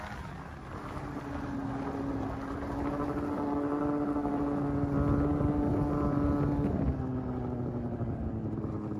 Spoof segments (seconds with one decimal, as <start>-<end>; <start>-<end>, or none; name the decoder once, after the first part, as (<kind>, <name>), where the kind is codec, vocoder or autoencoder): none